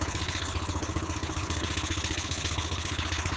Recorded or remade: remade